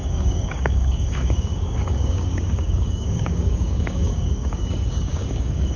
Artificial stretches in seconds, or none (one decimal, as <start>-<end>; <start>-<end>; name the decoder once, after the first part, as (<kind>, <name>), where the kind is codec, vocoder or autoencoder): 0.0-5.8 (codec, DAC)